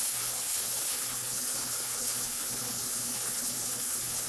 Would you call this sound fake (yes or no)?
yes